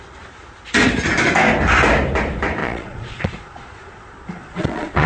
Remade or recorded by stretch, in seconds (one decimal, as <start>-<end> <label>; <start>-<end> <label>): 0.0-2.6 recorded; 2.6-5.1 remade